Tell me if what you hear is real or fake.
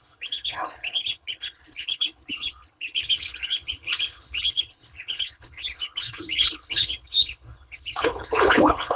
fake